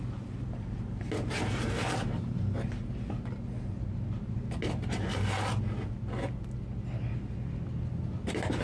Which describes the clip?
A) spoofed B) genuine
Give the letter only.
B